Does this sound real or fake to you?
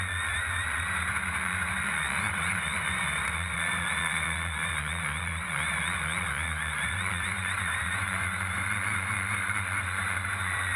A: fake